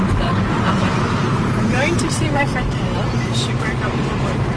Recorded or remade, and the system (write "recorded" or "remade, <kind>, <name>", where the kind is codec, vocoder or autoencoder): remade, vocoder, BigVGAN v2